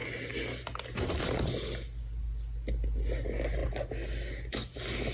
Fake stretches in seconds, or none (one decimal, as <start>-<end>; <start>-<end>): none